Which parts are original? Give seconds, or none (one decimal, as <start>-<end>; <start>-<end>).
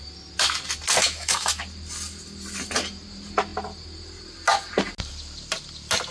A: 0.0-1.0; 1.6-6.1